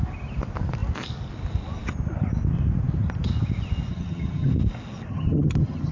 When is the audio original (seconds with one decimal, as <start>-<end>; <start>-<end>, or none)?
0.0-3.9; 4.5-5.1

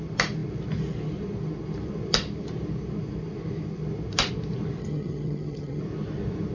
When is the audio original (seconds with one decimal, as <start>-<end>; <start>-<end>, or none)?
0.0-4.8; 5.8-6.5